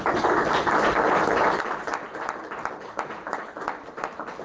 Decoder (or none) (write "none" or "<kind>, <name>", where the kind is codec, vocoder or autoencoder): none